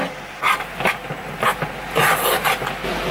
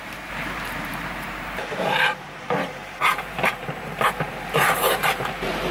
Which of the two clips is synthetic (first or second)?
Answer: second